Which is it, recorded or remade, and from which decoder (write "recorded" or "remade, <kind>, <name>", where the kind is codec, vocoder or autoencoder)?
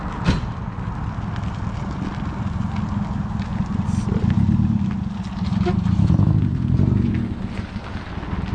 recorded